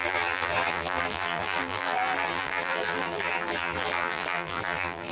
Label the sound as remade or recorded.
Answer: remade